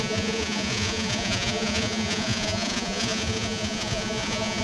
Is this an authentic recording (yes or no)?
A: no